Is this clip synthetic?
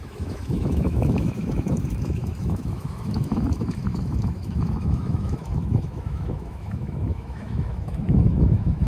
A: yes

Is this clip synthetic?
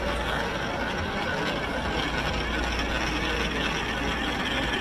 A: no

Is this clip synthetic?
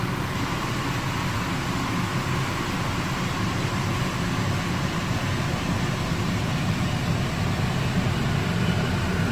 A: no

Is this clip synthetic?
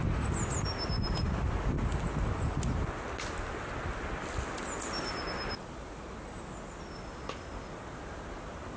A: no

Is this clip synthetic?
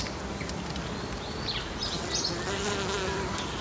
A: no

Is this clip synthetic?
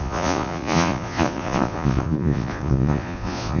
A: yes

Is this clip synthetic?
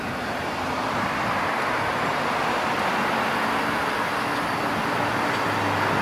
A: no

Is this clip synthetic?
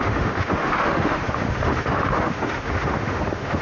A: yes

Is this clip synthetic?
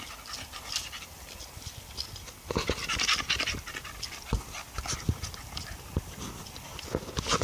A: no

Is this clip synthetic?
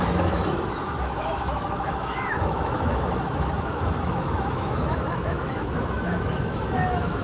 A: yes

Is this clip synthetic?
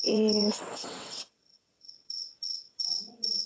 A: yes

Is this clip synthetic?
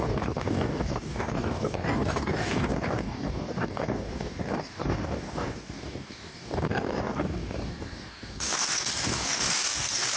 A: yes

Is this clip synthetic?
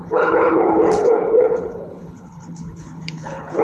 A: yes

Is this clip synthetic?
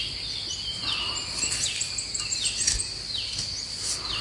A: no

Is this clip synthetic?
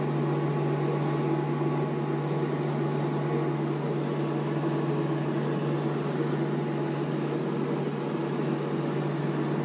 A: no